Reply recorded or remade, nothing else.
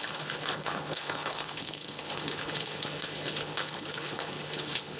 remade